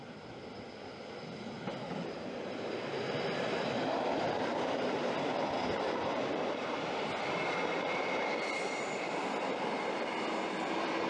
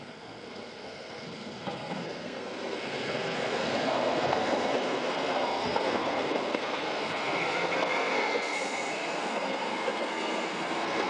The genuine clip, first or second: first